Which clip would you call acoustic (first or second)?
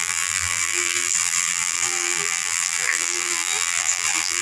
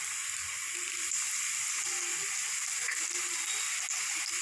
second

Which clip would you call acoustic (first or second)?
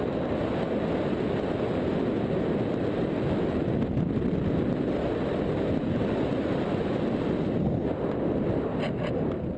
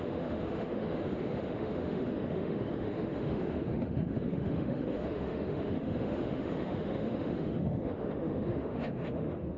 first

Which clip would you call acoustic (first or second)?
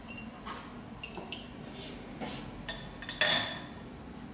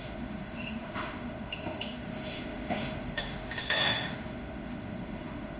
first